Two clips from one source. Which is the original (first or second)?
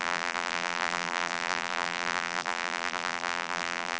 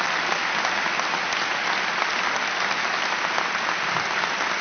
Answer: second